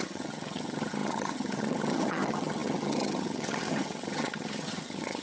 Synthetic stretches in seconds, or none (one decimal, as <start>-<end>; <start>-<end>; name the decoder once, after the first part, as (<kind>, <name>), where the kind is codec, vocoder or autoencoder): 0.0-5.2 (vocoder, HiFi-GAN)